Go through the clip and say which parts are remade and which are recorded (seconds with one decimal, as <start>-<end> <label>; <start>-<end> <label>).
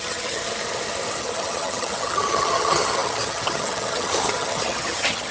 0.0-0.4 remade; 0.4-1.2 recorded; 1.2-5.3 remade